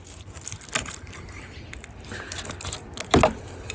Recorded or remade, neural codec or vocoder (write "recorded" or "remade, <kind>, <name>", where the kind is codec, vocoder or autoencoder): recorded